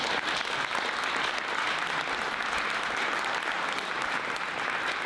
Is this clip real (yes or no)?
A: yes